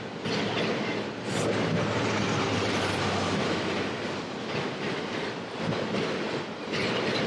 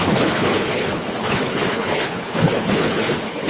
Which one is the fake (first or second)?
second